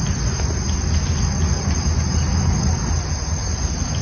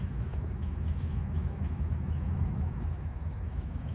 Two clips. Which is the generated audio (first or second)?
second